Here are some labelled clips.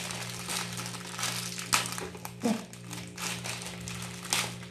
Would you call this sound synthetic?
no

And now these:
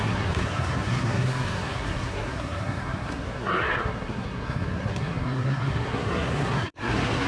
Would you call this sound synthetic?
yes